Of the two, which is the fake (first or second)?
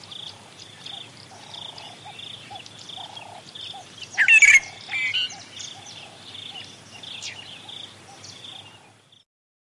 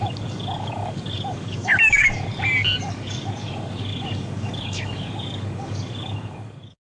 second